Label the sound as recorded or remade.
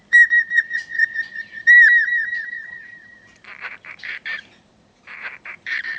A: remade